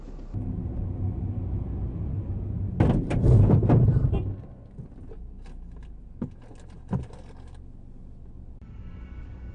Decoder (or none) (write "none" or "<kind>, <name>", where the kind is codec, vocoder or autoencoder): none